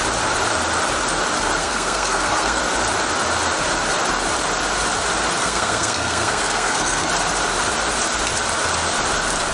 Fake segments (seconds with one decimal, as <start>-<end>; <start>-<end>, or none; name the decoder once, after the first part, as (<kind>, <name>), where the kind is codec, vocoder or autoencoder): 1.6-2.6 (codec, SNAC); 5.4-7.1